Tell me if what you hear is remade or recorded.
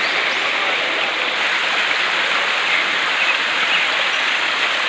recorded